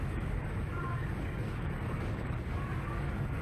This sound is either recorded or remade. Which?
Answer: remade